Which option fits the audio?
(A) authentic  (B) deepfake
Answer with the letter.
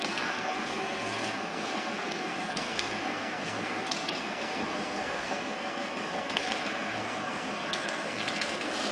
B